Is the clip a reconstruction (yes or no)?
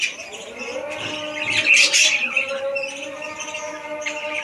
no